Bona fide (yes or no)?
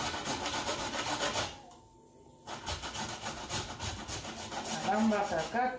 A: yes